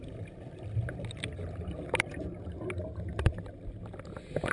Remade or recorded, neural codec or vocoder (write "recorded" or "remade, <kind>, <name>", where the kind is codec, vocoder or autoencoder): recorded